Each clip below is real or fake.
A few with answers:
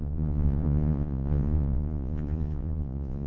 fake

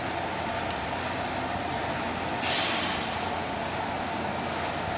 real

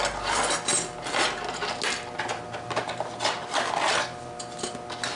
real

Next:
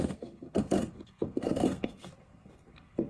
fake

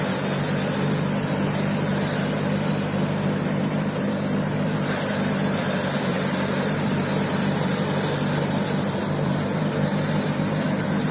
fake